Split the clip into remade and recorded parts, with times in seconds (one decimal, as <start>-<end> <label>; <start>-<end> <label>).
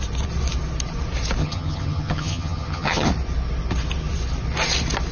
0.0-1.4 recorded; 1.4-3.1 remade; 3.1-5.1 recorded